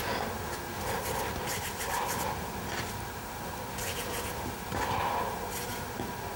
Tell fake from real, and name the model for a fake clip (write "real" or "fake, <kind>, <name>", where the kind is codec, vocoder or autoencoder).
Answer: real